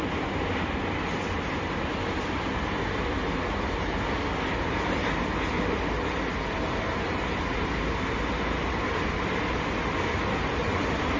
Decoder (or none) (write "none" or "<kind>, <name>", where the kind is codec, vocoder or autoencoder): none